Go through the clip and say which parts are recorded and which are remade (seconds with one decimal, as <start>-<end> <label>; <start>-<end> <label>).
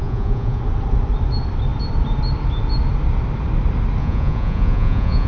0.0-0.6 remade; 0.6-4.0 recorded; 4.0-5.3 remade